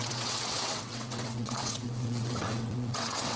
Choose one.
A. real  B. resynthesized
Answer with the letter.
B